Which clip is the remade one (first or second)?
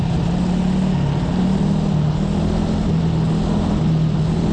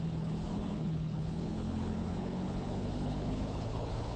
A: second